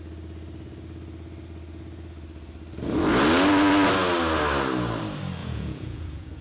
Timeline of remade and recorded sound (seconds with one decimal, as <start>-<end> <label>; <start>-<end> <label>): 0.0-5.4 recorded; 5.4-6.4 remade